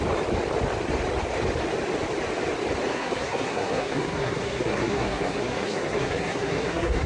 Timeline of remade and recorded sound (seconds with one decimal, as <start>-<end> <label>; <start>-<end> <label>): 0.0-2.9 recorded; 2.9-7.1 remade

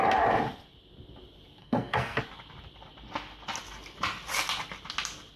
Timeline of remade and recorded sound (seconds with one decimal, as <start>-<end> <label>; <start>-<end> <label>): 0.0-1.6 recorded; 1.6-2.2 remade; 2.2-5.4 recorded

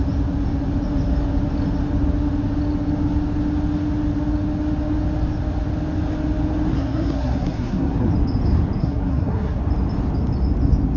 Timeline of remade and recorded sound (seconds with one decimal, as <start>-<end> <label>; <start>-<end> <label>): 0.0-6.7 recorded; 6.7-8.1 remade; 8.1-8.8 recorded; 8.8-9.6 remade; 9.6-11.0 recorded

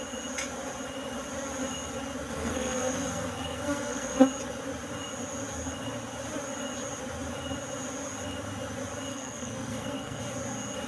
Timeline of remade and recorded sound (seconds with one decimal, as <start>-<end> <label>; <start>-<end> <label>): 0.0-2.3 recorded; 2.3-4.2 remade; 4.2-9.1 recorded; 9.1-10.2 remade; 10.2-10.9 recorded

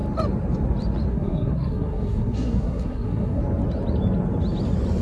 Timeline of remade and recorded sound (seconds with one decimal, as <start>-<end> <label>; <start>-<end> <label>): 0.0-1.1 recorded; 1.1-3.4 remade; 3.4-5.0 recorded